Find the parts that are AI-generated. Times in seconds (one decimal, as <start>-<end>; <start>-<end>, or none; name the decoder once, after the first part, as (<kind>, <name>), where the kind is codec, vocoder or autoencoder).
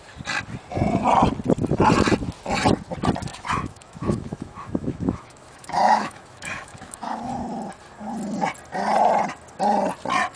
3.3-7.3 (autoencoder, DAC-VAE)